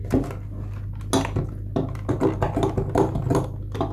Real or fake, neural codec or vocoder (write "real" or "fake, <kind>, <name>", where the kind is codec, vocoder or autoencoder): real